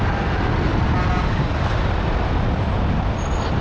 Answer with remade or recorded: remade